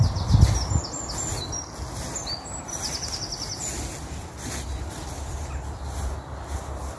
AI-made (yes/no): no